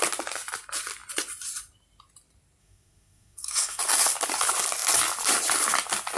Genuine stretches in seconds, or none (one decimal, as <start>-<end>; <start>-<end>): 0.0-2.6; 3.8-6.2